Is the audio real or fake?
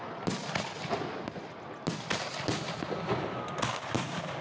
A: real